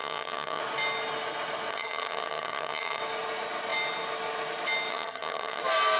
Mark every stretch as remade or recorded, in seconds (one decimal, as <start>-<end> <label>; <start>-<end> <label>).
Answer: 0.0-0.6 remade; 0.6-1.7 recorded; 1.7-3.0 remade; 3.0-4.9 recorded; 4.9-5.6 remade; 5.6-6.0 recorded